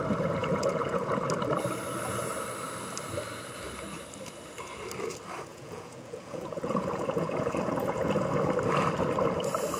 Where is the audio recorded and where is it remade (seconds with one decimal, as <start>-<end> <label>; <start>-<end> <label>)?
0.0-0.4 recorded; 0.4-1.1 remade; 1.1-5.5 recorded; 5.5-8.3 remade; 8.3-9.8 recorded